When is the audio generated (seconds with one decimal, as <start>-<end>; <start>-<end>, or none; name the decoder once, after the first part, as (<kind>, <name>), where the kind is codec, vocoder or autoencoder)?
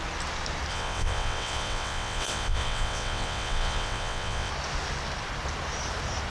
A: 0.7-4.5 (vocoder, WaveNeXt)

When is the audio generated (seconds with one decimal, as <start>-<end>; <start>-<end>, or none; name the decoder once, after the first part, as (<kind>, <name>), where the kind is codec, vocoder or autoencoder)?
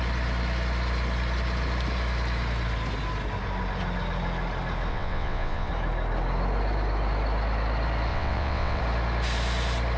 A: 4.9-5.7 (vocoder, WaveNeXt); 8.1-8.8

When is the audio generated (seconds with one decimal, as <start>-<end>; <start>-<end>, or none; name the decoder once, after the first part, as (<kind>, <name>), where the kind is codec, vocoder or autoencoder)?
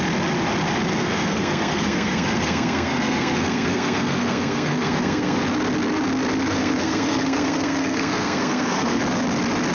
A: 0.9-5.4 (codec, SNAC); 6.6-9.0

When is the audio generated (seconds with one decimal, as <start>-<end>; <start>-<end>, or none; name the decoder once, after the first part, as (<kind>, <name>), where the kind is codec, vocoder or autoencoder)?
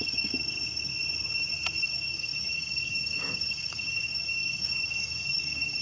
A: 0.0-0.9 (codec, DAC); 1.8-5.8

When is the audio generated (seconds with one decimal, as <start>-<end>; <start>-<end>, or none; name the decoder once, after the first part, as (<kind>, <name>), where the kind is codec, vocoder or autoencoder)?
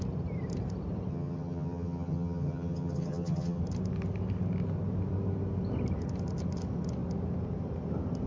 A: 1.1-3.6 (vocoder, HiFi-GAN)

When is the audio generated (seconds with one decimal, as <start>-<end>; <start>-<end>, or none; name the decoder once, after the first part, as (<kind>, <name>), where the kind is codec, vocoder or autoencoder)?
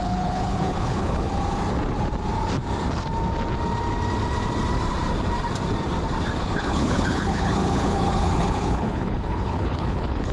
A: 0.0-1.3 (codec, HILCodec); 6.4-10.3